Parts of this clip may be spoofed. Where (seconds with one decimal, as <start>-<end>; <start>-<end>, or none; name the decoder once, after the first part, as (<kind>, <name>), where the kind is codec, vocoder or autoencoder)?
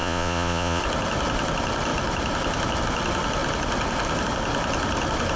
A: 0.0-0.8 (vocoder, Vocos)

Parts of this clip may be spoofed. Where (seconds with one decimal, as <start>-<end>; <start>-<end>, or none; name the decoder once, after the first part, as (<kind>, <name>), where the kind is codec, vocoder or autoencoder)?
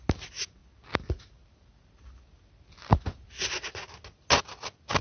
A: none